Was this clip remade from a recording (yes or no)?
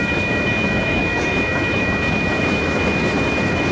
yes